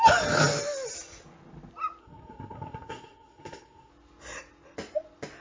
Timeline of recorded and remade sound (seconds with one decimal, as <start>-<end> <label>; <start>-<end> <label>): 0.0-2.0 recorded; 2.0-3.9 remade; 3.9-5.4 recorded